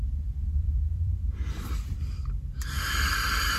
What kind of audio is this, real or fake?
fake